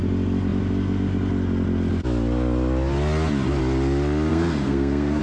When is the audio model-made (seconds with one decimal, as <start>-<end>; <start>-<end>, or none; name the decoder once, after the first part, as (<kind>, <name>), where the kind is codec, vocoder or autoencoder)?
4.3-5.2 (codec, SNAC)